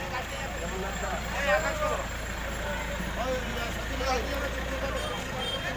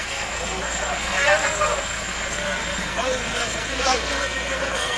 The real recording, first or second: first